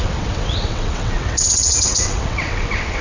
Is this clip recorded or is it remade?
remade